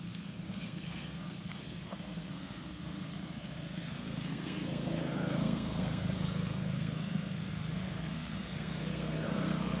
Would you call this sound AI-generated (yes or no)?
yes